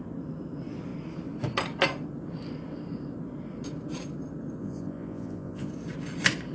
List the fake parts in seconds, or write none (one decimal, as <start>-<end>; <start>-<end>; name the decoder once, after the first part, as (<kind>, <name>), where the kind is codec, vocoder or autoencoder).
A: 4.6-5.7 (vocoder, Vocos)